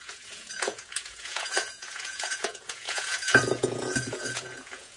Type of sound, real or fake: fake